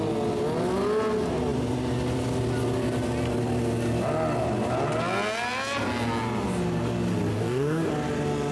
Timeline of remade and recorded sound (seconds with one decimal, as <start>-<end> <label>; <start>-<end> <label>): 0.0-7.3 recorded; 7.3-7.9 remade; 7.9-8.5 recorded